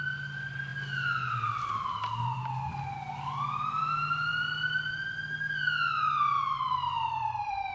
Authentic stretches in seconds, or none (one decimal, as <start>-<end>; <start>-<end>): 0.0-6.5